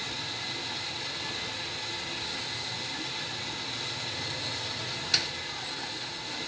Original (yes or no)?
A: yes